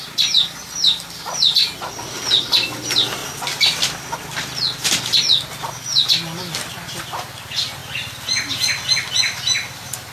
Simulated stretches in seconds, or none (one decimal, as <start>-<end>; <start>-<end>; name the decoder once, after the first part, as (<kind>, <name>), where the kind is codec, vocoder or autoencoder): 0.0-3.2 (vocoder, BigVGAN v2); 6.4-7.8; 9.0-10.1